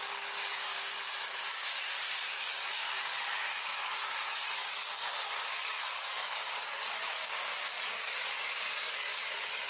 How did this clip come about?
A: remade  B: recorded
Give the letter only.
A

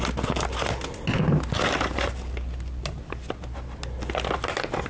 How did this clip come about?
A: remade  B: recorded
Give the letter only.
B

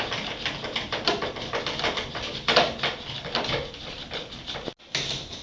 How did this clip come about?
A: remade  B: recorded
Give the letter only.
B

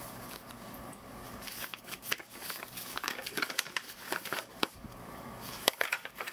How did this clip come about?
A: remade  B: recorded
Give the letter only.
A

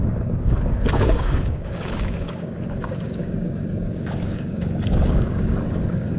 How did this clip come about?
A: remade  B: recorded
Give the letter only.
A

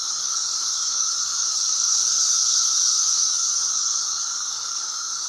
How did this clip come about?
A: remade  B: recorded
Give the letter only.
A